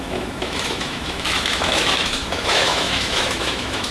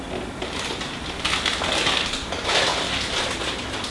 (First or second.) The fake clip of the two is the first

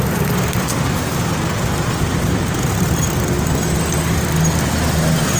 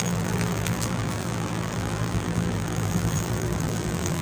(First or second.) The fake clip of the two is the second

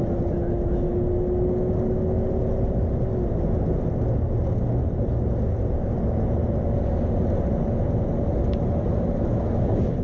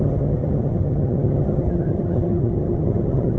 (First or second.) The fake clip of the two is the second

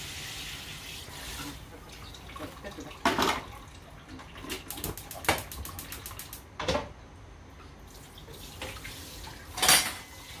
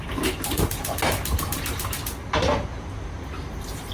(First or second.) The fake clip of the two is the second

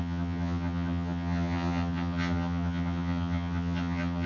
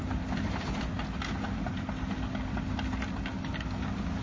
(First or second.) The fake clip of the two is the first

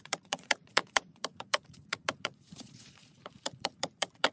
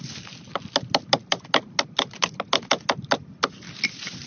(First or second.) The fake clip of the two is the first